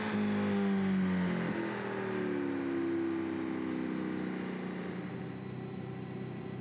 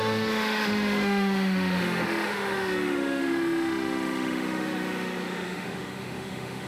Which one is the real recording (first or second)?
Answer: first